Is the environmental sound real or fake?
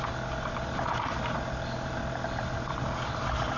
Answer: real